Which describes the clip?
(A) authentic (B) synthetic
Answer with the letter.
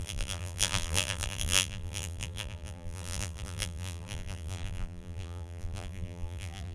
B